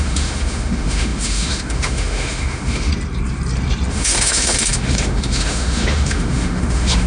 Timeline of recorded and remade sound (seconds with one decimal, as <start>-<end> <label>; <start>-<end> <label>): 0.0-2.9 remade; 2.9-3.9 recorded; 3.9-7.1 remade